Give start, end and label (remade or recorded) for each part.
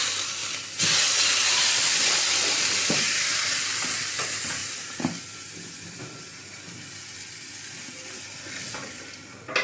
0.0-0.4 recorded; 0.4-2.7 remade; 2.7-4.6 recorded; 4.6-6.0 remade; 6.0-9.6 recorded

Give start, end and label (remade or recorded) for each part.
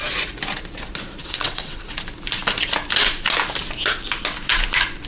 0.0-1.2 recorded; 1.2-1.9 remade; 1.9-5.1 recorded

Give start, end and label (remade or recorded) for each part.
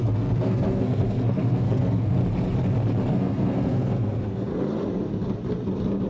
0.0-2.2 remade; 2.2-3.1 recorded; 3.1-4.5 remade; 4.5-6.1 recorded